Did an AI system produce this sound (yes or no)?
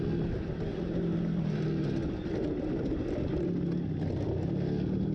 no